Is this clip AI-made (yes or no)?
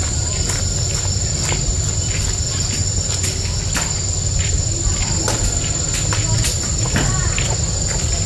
no